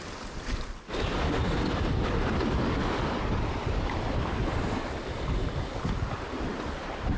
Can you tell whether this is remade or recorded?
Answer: remade